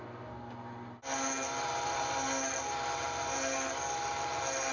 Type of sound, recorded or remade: recorded